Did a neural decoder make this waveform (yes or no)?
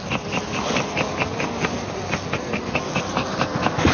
no